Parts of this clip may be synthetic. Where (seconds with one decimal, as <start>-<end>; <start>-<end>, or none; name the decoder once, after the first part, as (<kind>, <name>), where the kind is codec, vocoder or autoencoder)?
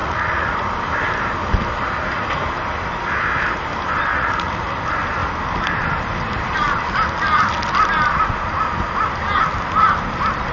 0.0-0.7 (vocoder, Vocos); 4.1-4.8